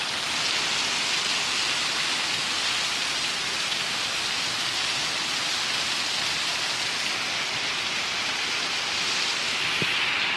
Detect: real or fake real